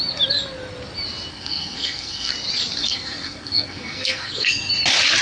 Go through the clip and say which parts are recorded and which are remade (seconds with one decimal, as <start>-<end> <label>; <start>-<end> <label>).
0.0-1.3 recorded; 1.3-2.3 remade; 2.3-2.8 recorded; 2.8-4.7 remade; 4.7-5.2 recorded